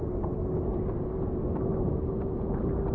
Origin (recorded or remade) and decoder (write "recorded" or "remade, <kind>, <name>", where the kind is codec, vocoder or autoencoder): recorded